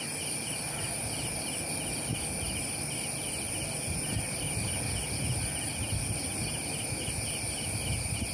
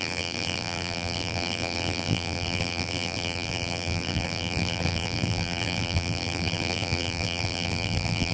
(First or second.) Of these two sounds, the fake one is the second